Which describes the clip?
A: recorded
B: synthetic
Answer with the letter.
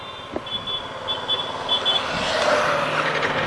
A